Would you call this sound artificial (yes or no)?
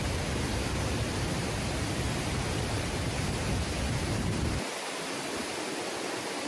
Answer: no